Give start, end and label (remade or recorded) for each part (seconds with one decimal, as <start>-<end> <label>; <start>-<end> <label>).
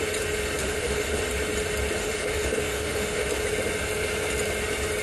0.0-0.6 recorded; 0.6-1.2 remade; 1.2-2.0 recorded; 2.0-3.3 remade; 3.3-5.0 recorded